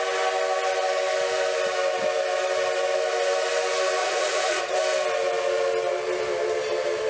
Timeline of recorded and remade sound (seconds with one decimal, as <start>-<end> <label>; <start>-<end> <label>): 0.0-4.0 recorded; 4.0-4.6 remade; 4.6-7.1 recorded